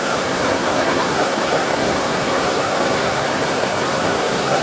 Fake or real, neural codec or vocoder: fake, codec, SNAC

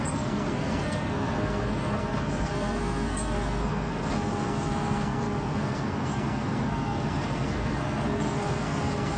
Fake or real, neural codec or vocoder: fake, codec, SNAC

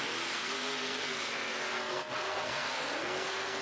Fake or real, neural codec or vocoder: fake, codec, SNAC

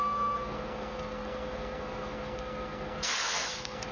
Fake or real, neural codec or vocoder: fake, codec, SNAC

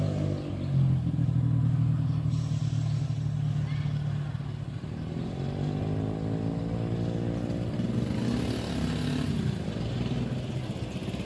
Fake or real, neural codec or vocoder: real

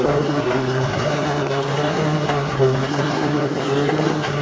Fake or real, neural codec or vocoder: fake, codec, SNAC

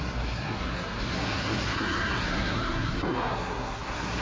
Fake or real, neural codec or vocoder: fake, codec, SNAC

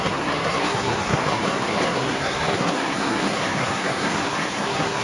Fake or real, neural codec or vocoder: fake, codec, SNAC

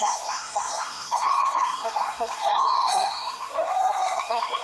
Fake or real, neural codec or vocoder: fake, codec, SNAC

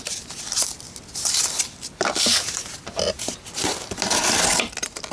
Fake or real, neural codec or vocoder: real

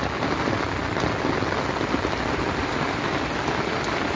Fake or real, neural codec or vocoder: real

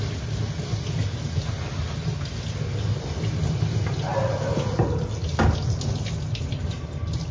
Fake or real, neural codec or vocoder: real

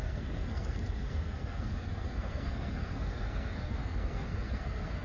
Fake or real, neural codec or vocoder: fake, codec, SNAC